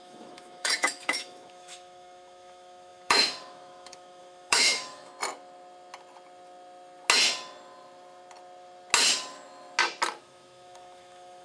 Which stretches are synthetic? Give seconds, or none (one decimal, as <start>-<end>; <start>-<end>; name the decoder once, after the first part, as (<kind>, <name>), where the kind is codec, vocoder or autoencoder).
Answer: 0.0-5.1 (autoencoder, DAC-VAE); 10.2-11.4